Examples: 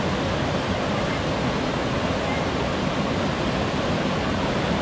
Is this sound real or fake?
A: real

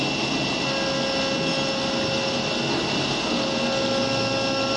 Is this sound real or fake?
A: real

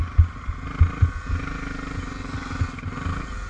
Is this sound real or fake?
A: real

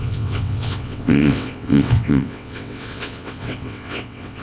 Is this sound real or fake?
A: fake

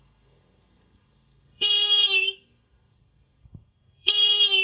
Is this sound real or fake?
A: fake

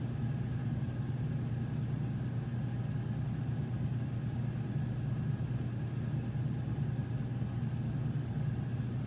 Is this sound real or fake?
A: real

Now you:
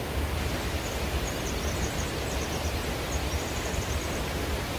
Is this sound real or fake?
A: real